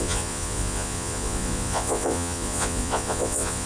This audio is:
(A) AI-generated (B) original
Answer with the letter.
A